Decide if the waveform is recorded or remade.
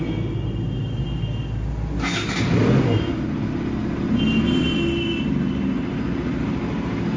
recorded